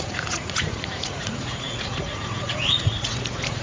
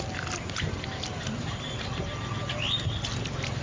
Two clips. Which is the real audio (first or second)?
second